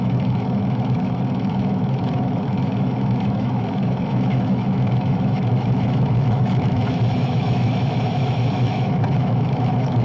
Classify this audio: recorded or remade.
remade